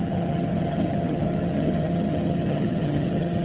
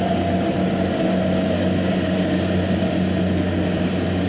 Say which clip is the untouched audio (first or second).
second